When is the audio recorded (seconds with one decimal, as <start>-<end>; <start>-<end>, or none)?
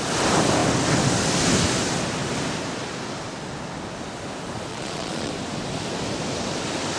0.0-4.7; 5.3-7.0